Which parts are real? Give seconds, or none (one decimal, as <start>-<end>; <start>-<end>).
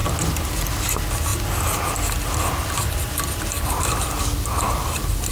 0.0-5.3